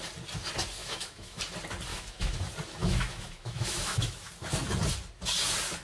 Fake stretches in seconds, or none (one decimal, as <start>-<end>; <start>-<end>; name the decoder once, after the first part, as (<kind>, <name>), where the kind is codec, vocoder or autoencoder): 0.8-1.4 (autoencoder, DAC-VAE); 1.9-2.4; 2.8-4.3